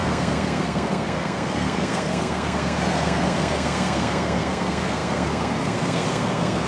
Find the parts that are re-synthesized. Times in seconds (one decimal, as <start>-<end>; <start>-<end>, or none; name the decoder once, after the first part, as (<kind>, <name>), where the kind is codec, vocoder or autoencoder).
0.0-6.7 (codec, SNAC)